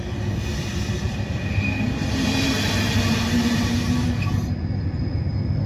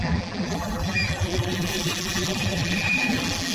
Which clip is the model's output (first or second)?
second